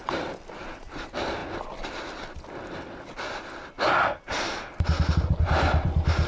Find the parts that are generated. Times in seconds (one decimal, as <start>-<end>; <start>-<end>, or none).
0.5-1.4; 5.2-6.3